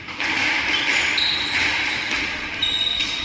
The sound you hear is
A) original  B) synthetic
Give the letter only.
A